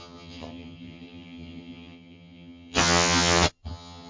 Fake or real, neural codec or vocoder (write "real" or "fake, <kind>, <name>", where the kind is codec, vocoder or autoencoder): fake, vocoder, HiFi-GAN